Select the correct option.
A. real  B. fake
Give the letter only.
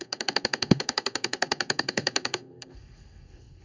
B